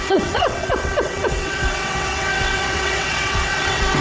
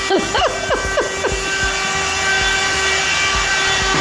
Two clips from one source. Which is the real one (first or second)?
second